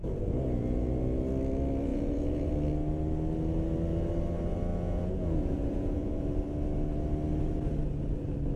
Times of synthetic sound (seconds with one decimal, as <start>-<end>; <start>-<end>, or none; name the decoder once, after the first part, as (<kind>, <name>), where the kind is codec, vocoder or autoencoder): 0.0-0.9 (vocoder, Vocos); 1.9-2.5; 4.7-6.2